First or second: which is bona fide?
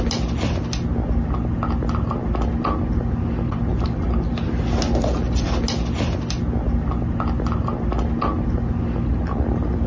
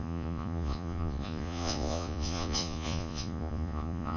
first